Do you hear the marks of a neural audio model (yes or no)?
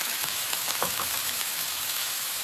yes